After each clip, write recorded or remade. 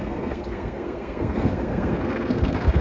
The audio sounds remade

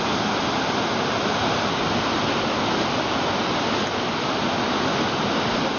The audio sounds recorded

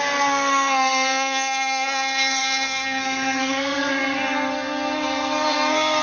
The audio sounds remade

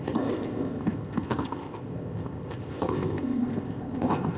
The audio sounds remade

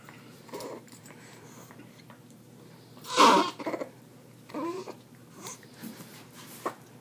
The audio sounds remade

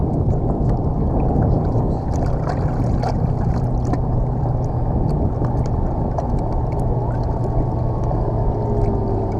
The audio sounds recorded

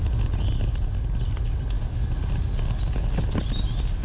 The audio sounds recorded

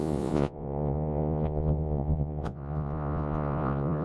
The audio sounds remade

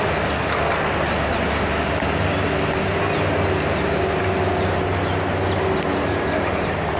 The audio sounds recorded